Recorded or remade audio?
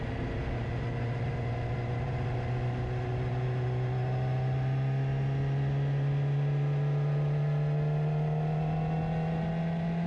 recorded